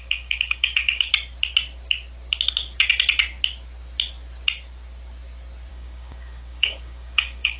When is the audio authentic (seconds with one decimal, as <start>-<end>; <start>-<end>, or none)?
1.1-5.7